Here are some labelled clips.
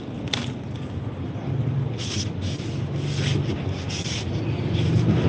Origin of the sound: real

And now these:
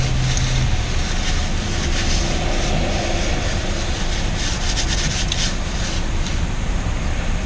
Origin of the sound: real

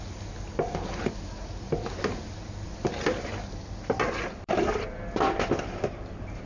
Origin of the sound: real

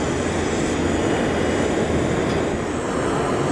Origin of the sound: real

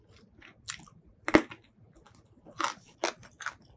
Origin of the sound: real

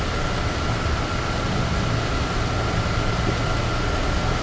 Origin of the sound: real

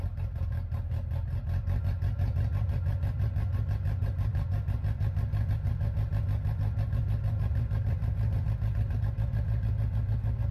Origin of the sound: real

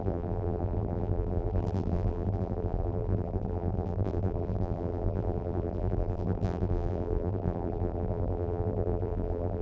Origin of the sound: fake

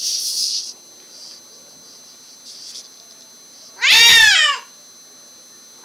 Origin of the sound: real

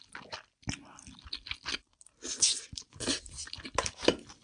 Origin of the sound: real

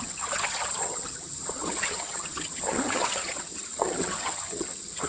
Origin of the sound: fake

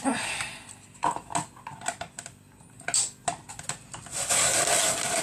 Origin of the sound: real